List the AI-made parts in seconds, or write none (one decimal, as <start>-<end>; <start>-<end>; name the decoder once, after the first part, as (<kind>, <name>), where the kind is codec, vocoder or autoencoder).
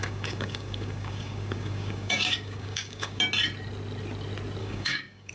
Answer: 0.0-3.2 (codec, DAC); 4.6-5.3